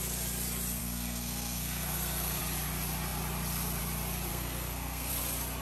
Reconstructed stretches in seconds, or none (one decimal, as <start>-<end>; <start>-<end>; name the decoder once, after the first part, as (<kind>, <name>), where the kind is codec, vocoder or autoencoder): 0.8-2.4 (codec, SNAC); 4.3-5.1